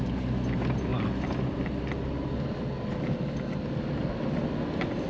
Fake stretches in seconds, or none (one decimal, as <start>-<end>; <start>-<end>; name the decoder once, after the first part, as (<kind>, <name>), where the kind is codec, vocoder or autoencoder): none